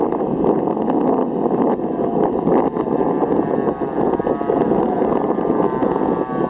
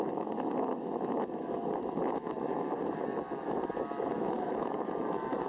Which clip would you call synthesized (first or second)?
second